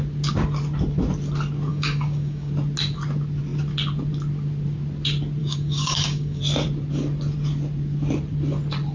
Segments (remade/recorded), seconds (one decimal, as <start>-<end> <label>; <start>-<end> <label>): 0.0-1.7 recorded; 1.7-2.5 remade; 2.5-5.4 recorded; 5.4-6.4 remade; 6.4-8.9 recorded